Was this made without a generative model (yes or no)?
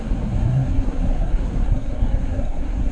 no